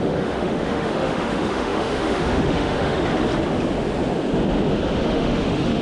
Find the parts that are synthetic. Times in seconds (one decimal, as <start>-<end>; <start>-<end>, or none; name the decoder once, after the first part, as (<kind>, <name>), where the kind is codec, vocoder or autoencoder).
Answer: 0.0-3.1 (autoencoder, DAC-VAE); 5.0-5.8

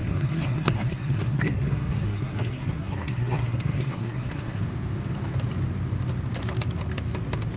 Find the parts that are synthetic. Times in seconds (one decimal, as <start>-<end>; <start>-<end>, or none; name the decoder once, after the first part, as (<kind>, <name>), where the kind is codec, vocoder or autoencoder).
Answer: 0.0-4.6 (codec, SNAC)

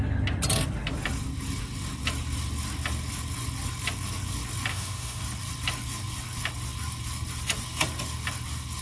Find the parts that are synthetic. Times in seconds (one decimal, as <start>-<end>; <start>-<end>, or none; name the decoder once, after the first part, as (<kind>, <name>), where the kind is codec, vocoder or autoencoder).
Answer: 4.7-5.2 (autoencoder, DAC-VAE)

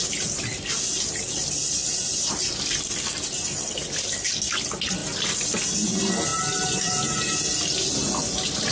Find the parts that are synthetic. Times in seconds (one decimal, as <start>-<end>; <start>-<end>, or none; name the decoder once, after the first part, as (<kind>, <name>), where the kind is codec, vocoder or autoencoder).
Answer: 6.3-7.1 (vocoder, BigVGAN v2)